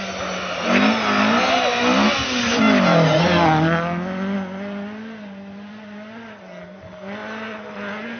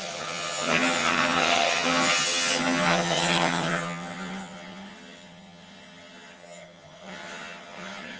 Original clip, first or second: first